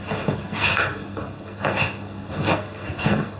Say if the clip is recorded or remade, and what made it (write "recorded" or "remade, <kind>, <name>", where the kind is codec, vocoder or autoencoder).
remade, codec, SNAC